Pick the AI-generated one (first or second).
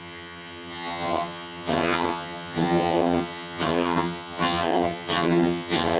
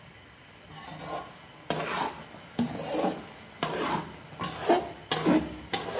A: first